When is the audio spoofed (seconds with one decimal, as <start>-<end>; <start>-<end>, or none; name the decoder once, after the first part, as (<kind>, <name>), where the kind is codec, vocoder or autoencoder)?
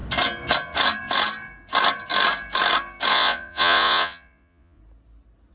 3.1-4.8 (vocoder, Vocos)